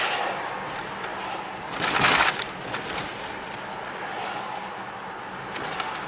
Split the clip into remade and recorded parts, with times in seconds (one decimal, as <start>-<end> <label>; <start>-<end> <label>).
0.0-1.1 recorded; 1.1-4.8 remade; 4.8-6.1 recorded